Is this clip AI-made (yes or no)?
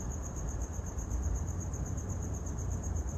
yes